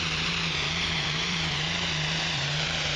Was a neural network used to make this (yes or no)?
yes